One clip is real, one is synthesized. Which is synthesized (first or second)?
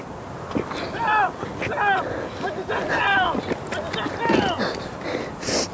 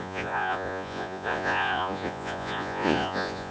second